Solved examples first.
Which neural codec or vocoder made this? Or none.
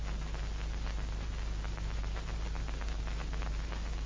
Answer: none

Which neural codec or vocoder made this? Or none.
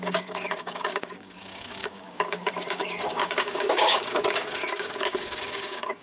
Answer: codec, DAC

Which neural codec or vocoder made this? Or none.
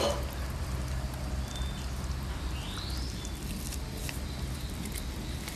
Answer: none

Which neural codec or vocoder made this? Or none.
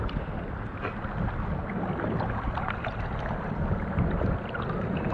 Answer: none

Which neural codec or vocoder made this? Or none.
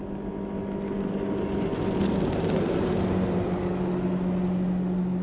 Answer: none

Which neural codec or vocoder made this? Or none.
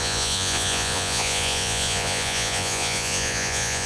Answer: vocoder, Vocos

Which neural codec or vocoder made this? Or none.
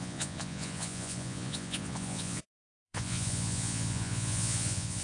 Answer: vocoder, Vocos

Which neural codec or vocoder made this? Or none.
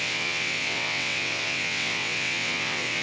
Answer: vocoder, WaveNeXt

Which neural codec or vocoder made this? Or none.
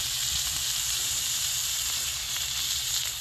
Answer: vocoder, BigVGAN v2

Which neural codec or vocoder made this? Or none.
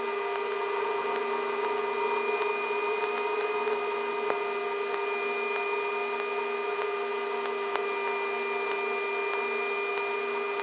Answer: none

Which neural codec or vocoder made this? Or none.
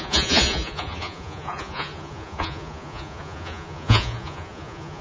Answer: vocoder, Vocos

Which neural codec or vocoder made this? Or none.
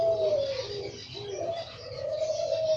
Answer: none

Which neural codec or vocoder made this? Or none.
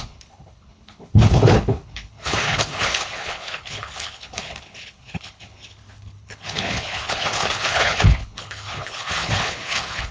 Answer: codec, HILCodec